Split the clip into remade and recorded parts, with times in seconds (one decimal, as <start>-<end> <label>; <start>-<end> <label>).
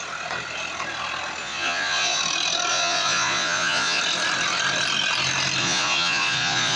0.0-1.4 recorded; 1.4-2.2 remade; 2.2-2.7 recorded; 2.7-4.0 remade; 4.0-5.6 recorded; 5.6-6.8 remade